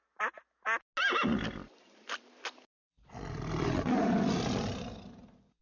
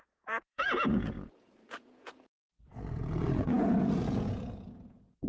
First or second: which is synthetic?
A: second